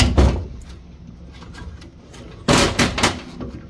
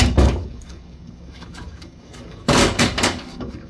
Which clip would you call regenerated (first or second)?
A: second